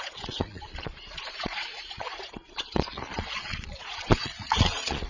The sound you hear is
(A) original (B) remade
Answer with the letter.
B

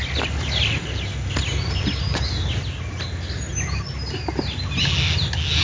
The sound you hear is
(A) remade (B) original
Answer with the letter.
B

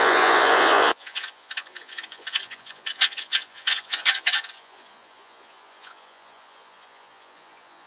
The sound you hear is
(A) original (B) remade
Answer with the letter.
B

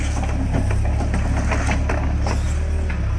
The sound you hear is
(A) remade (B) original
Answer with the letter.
B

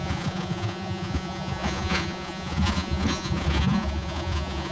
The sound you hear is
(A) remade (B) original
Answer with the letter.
A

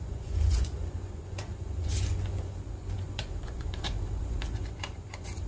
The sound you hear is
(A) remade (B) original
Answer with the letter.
A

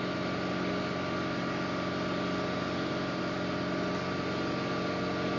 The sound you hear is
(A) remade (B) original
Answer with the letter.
B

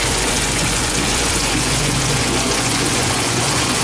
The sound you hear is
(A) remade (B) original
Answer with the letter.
A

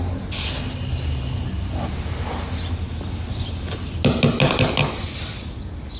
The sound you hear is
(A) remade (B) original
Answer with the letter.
B